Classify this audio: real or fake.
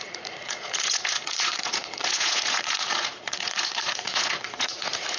fake